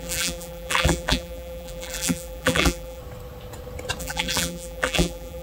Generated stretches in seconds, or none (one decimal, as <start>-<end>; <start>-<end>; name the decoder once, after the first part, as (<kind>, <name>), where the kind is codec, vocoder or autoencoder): 0.0-3.0 (vocoder, BigVGAN v2); 4.0-5.4